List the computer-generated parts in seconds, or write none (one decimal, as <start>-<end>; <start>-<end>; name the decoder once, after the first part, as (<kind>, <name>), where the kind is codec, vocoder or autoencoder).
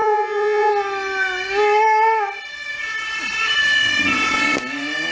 0.0-0.7 (vocoder, Vocos)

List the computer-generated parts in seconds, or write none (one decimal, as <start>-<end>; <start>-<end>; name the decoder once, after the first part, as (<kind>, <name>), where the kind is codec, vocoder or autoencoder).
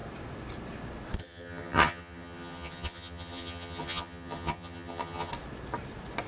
1.2-5.3 (vocoder, HiFi-GAN)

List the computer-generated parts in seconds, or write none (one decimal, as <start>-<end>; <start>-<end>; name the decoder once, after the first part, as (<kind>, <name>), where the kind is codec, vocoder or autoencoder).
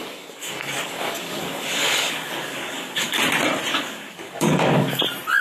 0.0-3.2 (codec, DAC); 3.7-5.0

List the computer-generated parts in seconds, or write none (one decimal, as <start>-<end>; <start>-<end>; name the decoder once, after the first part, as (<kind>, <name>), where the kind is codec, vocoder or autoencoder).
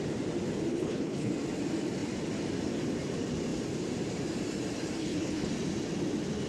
0.7-1.3 (codec, HILCodec); 5.0-5.5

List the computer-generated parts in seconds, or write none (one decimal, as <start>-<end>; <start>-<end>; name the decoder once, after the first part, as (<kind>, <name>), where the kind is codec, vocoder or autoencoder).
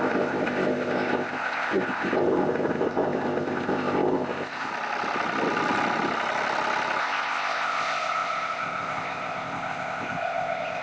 0.0-4.7 (codec, ZipCodec); 7.0-10.8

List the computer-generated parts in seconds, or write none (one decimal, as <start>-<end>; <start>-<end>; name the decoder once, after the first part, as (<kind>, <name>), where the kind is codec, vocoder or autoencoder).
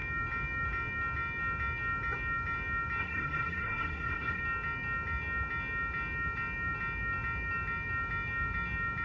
3.0-4.4 (codec, SNAC)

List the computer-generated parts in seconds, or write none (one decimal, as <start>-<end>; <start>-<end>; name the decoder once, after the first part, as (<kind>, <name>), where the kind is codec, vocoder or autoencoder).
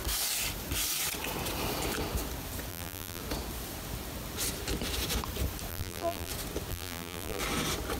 2.7-3.2 (vocoder, BigVGAN v2); 5.7-6.3; 6.7-7.4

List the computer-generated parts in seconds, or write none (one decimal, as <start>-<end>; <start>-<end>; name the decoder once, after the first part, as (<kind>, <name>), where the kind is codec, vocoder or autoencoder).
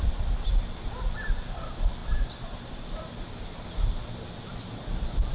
none